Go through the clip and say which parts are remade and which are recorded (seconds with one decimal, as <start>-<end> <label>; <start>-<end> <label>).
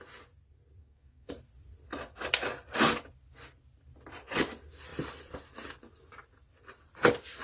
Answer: 0.0-0.8 recorded; 0.8-1.3 remade; 1.3-7.4 recorded